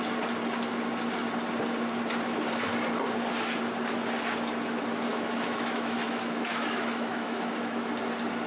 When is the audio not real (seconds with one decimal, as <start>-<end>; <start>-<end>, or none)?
5.1-7.9